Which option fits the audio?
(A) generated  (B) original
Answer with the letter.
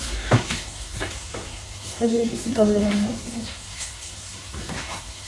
A